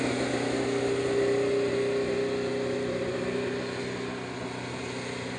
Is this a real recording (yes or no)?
yes